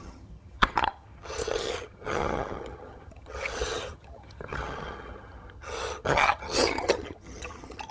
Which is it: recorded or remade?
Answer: remade